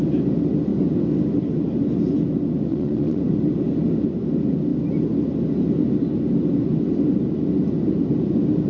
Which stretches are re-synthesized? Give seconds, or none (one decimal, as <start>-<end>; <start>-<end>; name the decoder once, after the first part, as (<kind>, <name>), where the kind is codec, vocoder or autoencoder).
2.7-3.2 (vocoder, Vocos)